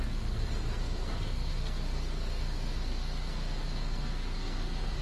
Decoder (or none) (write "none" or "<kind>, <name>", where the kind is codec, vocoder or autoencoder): codec, SNAC